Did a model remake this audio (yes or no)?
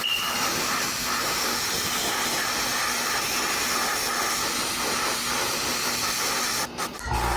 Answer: no